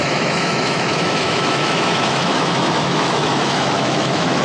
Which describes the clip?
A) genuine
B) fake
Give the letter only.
B